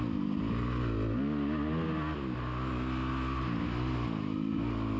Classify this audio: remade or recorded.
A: recorded